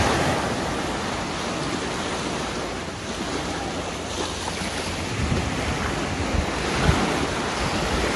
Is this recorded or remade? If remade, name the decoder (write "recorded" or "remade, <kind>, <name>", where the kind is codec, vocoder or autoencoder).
recorded